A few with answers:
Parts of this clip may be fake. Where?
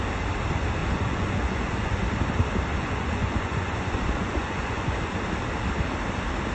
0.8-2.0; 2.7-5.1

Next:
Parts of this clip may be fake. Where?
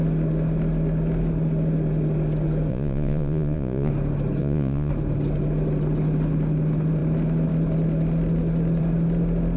2.7-3.9; 4.4-4.9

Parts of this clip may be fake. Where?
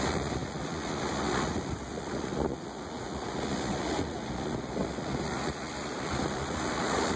0.0-7.2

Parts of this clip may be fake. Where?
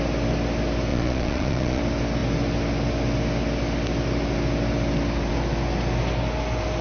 0.9-1.8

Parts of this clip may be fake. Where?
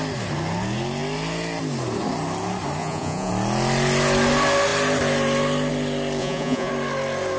2.8-3.3; 6.2-6.7